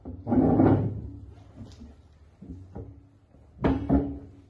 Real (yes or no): yes